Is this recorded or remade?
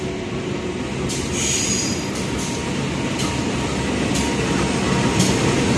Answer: recorded